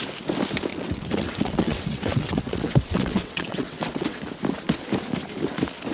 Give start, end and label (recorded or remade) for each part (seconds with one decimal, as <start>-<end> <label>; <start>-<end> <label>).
0.0-0.7 recorded; 0.7-4.2 remade; 4.2-5.9 recorded